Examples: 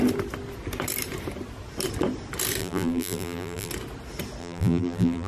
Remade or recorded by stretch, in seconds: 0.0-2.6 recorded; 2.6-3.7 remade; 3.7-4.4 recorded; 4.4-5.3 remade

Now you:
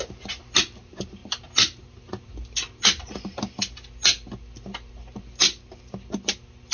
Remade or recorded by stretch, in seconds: 0.0-6.7 recorded